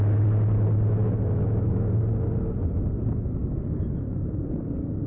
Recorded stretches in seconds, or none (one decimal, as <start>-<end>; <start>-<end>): 0.0-1.0; 1.9-5.1